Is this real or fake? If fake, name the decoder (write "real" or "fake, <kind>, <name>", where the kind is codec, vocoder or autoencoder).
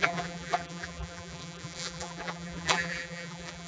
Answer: fake, vocoder, BigVGAN v2